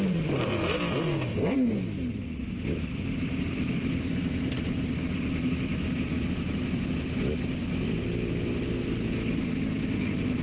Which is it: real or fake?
real